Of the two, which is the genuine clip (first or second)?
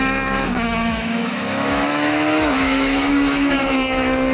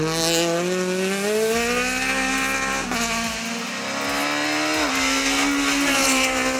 second